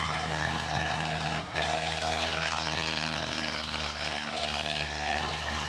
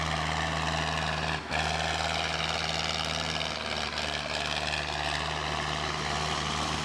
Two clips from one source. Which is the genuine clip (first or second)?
second